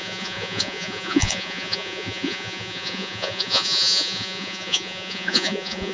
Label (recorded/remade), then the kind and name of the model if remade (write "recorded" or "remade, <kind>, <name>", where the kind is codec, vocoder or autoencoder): remade, vocoder, Vocos